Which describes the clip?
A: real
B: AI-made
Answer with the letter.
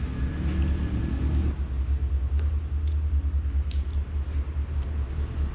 A